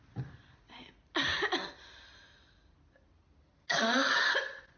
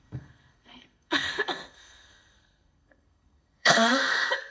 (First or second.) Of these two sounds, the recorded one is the first